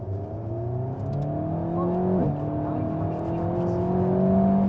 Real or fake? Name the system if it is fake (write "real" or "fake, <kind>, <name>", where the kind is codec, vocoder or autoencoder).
real